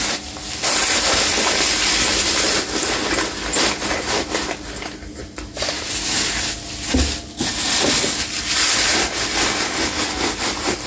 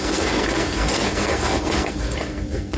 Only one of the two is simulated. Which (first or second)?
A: second